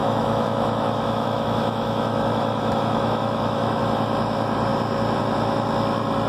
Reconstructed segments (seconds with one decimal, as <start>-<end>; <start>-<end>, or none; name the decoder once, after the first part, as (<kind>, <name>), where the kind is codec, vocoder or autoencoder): 0.0-3.8 (autoencoder, DAC-VAE)